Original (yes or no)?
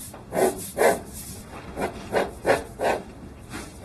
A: yes